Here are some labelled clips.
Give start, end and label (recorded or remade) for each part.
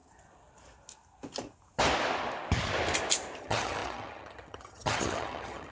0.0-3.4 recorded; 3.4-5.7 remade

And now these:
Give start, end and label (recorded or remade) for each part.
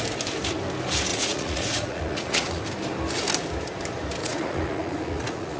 0.0-1.1 recorded; 1.1-2.6 remade; 2.6-4.2 recorded; 4.2-5.6 remade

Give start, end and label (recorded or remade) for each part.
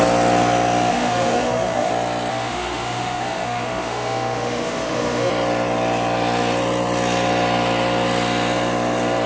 0.0-0.9 recorded; 0.9-1.9 remade; 1.9-2.3 recorded; 2.3-5.3 remade; 5.3-9.3 recorded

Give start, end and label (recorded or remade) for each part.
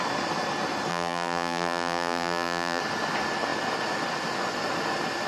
0.0-0.9 recorded; 0.9-2.8 remade; 2.8-5.3 recorded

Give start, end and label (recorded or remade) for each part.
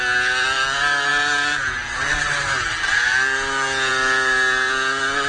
0.0-5.3 recorded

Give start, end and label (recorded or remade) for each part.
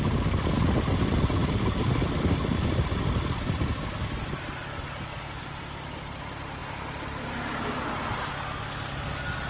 0.0-9.5 recorded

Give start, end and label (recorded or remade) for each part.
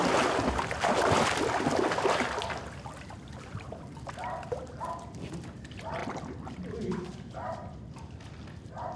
0.0-9.0 recorded